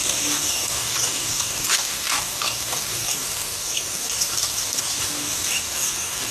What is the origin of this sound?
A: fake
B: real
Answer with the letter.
A